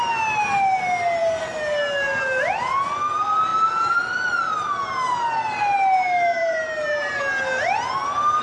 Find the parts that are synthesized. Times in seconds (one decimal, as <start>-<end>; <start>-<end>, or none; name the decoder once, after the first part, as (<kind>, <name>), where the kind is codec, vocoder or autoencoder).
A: 6.4-7.2 (vocoder, BigVGAN v2)